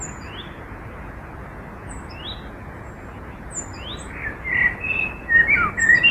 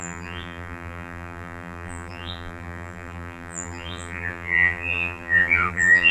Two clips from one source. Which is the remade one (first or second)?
second